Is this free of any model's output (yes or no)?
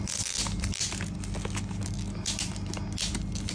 yes